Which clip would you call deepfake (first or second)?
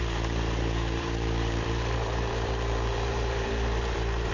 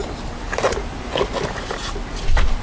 first